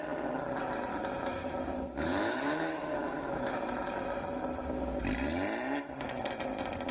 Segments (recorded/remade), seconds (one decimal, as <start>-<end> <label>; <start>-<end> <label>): 0.0-0.9 recorded; 0.9-5.0 remade; 5.0-6.9 recorded